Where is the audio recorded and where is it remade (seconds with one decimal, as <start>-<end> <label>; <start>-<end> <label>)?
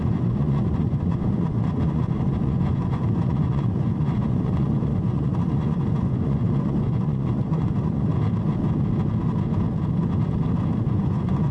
0.0-8.1 remade; 8.1-10.9 recorded; 10.9-11.5 remade